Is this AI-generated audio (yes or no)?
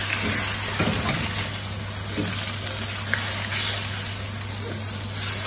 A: no